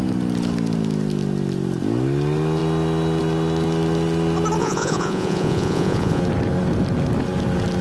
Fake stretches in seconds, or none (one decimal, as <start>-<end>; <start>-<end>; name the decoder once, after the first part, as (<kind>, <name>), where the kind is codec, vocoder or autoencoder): 4.6-6.2 (vocoder, Vocos)